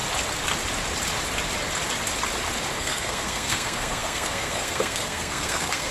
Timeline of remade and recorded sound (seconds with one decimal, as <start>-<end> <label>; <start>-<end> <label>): 0.0-2.8 recorded; 2.8-5.9 remade